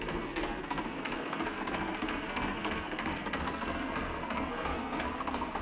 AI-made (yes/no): yes